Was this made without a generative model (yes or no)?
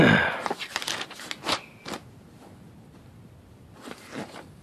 yes